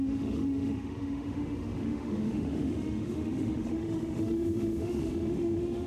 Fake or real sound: fake